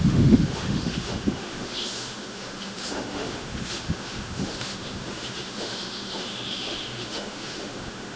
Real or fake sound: fake